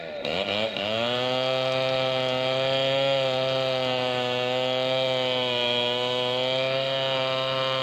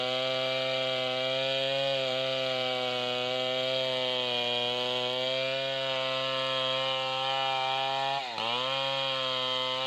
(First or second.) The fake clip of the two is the first